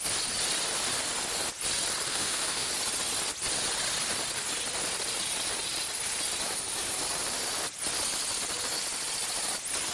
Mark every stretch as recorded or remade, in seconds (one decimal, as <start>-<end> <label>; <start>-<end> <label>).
0.0-2.1 recorded; 2.1-2.7 remade; 2.7-9.9 recorded